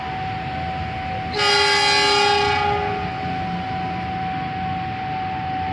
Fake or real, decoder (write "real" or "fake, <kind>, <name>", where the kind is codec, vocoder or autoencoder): real